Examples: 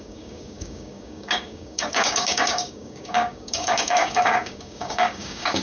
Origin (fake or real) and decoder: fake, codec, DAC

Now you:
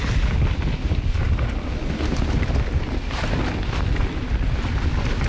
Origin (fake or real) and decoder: real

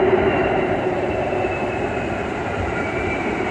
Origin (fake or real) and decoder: fake, vocoder, BigVGAN v2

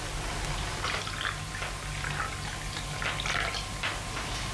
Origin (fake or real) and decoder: real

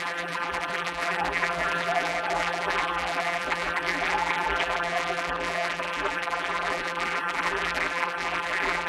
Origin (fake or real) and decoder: fake, vocoder, BigVGAN v2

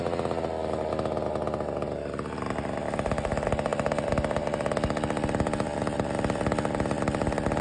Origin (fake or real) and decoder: real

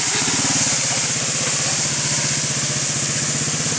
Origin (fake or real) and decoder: real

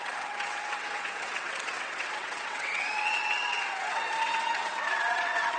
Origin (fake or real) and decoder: fake, vocoder, WaveNeXt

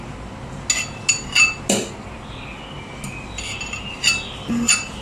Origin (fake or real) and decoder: real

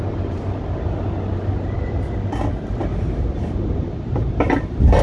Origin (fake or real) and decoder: real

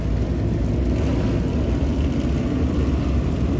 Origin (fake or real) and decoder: real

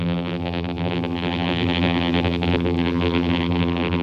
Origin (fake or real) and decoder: fake, vocoder, BigVGAN v2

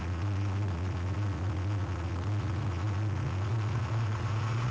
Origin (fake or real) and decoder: fake, vocoder, Vocos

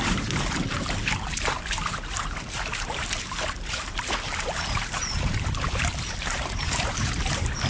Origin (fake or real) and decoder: fake, vocoder, BigVGAN v2